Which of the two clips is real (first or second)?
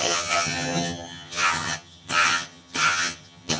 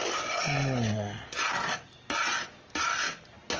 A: second